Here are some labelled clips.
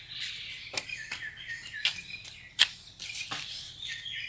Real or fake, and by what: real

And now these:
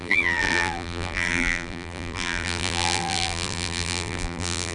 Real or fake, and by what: fake, vocoder, BigVGAN v2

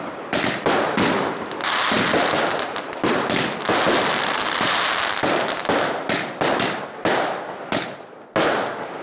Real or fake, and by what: real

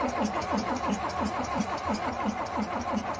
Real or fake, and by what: fake, vocoder, BigVGAN v2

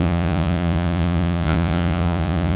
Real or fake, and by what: fake, vocoder, Vocos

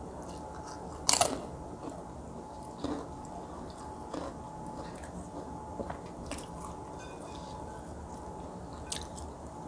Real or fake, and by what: real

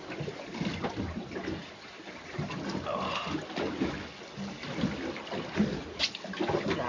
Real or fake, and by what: real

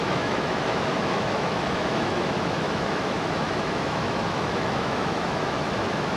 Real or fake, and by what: fake, autoencoder, DAC-VAE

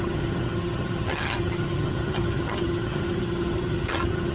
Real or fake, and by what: fake, vocoder, HiFi-GAN